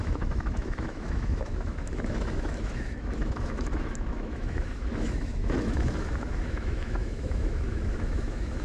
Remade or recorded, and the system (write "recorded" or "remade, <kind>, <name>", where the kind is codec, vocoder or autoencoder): remade, autoencoder, DAC-VAE